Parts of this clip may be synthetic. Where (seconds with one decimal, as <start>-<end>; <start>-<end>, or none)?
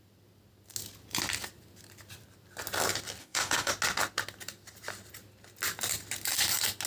3.2-3.7